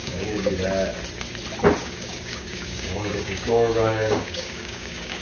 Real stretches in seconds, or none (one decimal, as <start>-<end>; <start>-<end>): 0.5-1.8